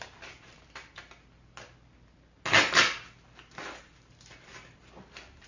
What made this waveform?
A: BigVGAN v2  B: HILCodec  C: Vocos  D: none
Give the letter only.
D